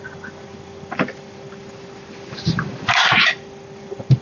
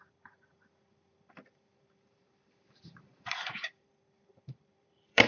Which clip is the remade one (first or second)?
second